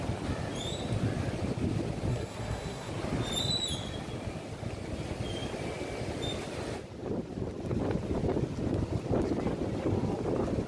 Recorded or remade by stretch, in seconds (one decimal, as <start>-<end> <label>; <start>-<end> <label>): 0.0-2.1 recorded; 2.1-2.9 remade; 2.9-10.7 recorded

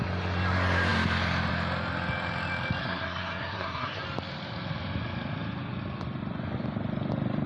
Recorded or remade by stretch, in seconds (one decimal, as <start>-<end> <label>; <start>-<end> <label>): 0.0-2.8 recorded; 2.8-4.0 remade; 4.0-7.5 recorded

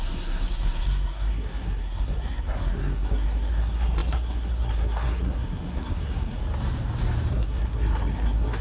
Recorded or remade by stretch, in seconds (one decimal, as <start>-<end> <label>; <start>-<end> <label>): 0.0-6.4 remade; 6.4-7.3 recorded; 7.3-8.6 remade

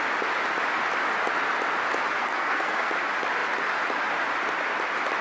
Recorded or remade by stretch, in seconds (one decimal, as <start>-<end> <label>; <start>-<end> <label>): 0.0-2.2 recorded; 2.2-2.9 remade; 2.9-5.2 recorded

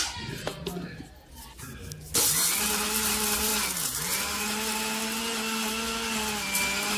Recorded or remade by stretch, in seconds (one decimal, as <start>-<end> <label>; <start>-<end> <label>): 0.0-7.0 recorded

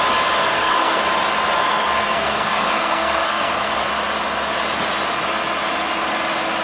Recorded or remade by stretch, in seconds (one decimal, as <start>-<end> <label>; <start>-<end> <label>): 0.0-0.4 recorded; 0.4-1.0 remade; 1.0-1.6 recorded; 1.6-3.9 remade; 3.9-6.6 recorded

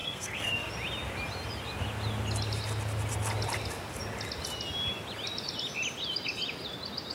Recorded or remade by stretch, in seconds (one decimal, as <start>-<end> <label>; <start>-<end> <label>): 0.0-0.7 remade; 0.7-7.1 recorded

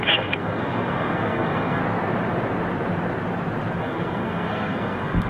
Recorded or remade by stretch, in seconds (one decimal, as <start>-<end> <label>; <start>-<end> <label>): 0.0-1.8 remade; 1.8-3.8 recorded; 3.8-5.3 remade